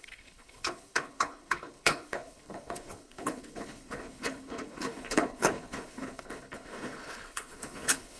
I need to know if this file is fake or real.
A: fake